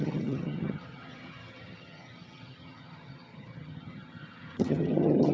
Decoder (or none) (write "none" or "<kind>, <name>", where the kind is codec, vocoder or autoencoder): vocoder, HiFi-GAN